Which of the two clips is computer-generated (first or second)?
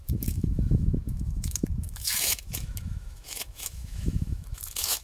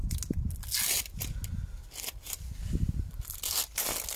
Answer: first